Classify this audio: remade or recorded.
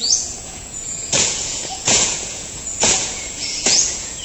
remade